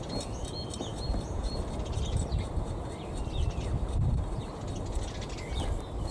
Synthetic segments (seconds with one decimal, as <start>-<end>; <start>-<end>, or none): 0.9-4.5